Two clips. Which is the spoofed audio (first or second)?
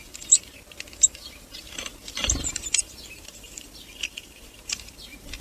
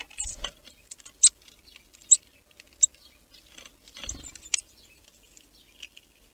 first